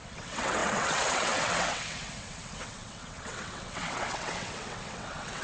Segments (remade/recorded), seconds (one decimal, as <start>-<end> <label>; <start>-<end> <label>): 0.0-5.4 remade